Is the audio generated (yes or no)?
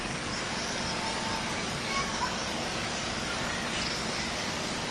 yes